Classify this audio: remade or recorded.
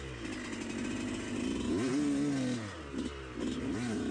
recorded